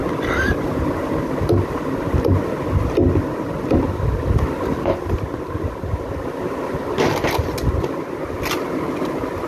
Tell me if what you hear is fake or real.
real